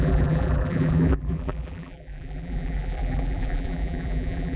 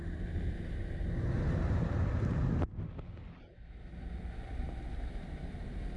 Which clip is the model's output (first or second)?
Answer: first